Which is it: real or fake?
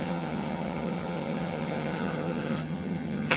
fake